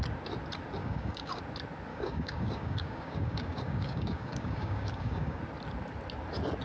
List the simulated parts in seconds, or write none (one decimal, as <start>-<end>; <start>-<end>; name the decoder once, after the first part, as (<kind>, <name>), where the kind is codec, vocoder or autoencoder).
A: 0.8-1.4 (codec, DAC); 1.9-5.4